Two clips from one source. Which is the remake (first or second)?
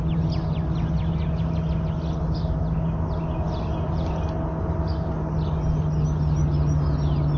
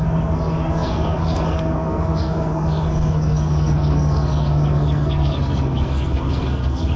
second